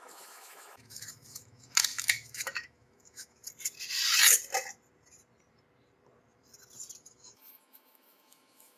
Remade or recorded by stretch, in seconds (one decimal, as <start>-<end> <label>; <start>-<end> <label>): 0.0-3.4 remade; 3.4-7.0 recorded; 7.0-8.8 remade